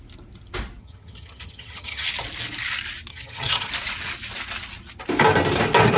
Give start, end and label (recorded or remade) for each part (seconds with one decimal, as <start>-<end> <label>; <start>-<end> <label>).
0.0-0.8 recorded; 0.8-2.1 remade; 2.1-3.1 recorded; 3.1-3.7 remade; 3.7-6.0 recorded